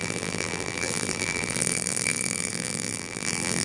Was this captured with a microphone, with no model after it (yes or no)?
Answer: no